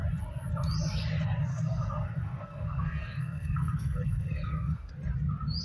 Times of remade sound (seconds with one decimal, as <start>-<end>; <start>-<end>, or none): 1.5-4.9